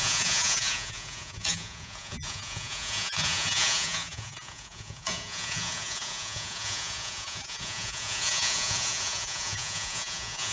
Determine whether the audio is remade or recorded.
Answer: remade